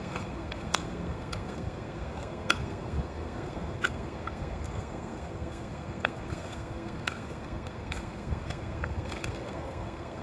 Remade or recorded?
remade